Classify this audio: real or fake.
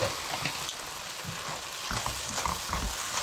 real